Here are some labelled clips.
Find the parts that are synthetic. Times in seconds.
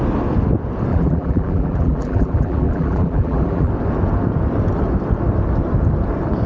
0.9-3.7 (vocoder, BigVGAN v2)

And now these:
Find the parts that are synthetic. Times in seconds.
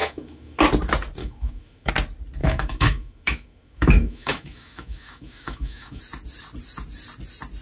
0.0-0.6 (autoencoder, DAC-VAE); 1.2-1.9; 2.4-6.0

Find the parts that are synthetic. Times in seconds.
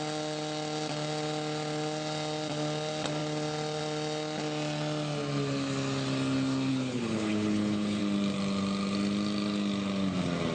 6.7-8.0 (codec, HILCodec)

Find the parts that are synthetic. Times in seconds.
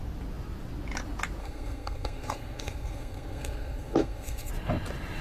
1.4-4.5 (codec, SNAC)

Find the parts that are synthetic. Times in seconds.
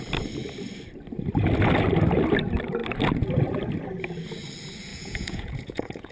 4.9-6.1 (vocoder, Vocos)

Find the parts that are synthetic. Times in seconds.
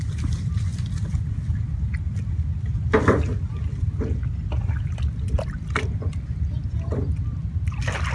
none